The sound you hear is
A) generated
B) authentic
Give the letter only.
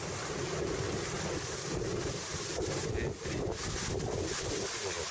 B